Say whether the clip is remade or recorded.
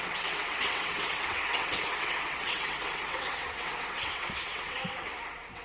remade